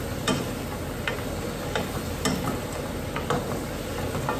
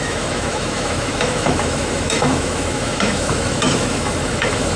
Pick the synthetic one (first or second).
second